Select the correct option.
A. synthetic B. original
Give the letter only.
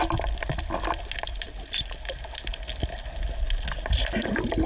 B